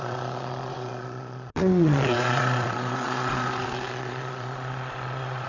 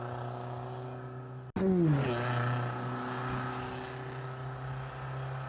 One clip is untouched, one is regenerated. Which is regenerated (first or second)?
first